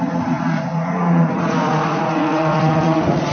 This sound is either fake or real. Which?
fake